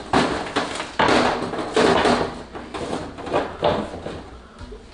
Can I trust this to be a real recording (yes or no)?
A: yes